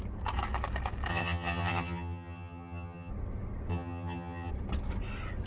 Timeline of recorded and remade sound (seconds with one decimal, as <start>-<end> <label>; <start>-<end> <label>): 0.0-1.1 recorded; 1.1-3.1 remade; 3.1-3.7 recorded; 3.7-4.5 remade; 4.5-5.5 recorded